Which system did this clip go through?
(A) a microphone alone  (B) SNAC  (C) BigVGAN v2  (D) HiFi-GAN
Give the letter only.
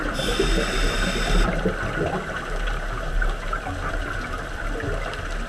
A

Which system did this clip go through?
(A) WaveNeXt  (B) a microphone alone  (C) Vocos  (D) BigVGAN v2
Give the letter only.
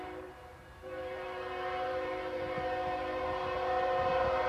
D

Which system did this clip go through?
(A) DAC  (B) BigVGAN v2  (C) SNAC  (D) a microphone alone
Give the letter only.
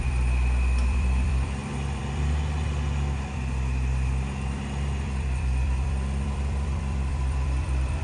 B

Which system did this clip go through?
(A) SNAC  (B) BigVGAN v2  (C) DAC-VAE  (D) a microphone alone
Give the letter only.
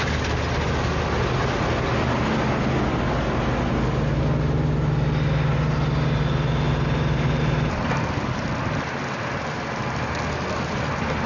D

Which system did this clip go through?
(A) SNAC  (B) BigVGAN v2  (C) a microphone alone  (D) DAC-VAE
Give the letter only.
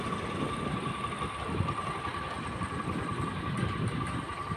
C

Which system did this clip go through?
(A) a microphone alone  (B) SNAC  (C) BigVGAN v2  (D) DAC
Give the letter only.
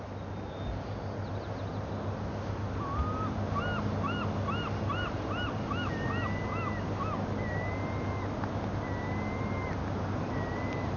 A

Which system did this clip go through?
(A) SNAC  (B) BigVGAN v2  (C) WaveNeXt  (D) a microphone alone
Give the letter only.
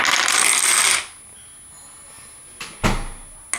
D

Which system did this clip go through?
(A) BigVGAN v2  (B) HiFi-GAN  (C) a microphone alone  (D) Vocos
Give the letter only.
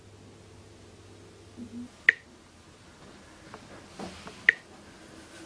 C